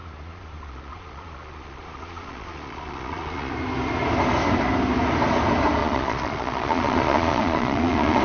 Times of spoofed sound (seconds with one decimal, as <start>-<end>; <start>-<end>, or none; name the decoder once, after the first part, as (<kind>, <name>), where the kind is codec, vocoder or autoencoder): 0.0-3.5 (vocoder, Vocos); 5.8-8.2